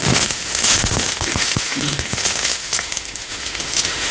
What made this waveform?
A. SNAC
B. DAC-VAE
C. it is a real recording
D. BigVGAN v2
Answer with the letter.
B